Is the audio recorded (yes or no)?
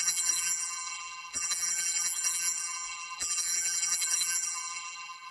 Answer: no